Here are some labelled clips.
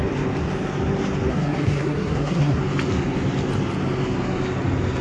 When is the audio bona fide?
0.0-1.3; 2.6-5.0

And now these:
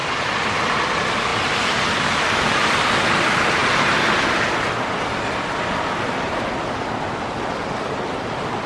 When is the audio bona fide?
0.9-8.7

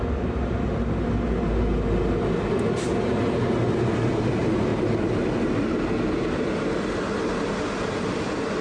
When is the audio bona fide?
0.0-8.6

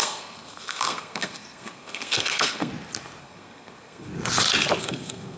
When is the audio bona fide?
2.7-3.2; 4.1-4.8

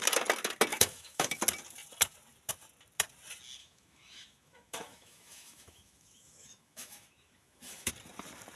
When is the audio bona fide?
0.0-0.7; 1.4-3.6; 7.9-8.6